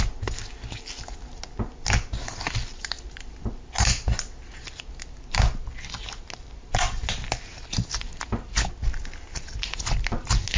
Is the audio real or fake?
real